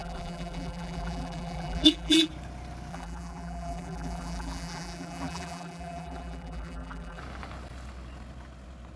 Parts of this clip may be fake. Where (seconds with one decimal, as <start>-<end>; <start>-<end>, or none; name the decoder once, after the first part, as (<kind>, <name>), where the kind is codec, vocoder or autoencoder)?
0.0-2.3 (vocoder, BigVGAN v2); 2.9-7.2